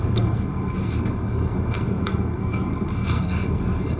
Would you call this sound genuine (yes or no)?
no